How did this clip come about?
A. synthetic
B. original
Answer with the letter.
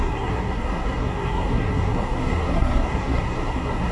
A